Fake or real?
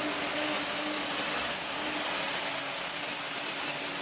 real